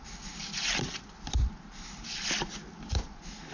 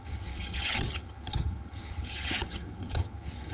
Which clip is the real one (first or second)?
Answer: first